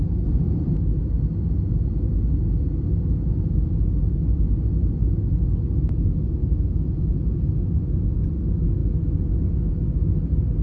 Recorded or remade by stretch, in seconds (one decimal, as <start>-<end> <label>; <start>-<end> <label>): 0.0-10.6 recorded